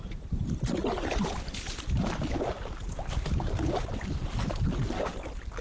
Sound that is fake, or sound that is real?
real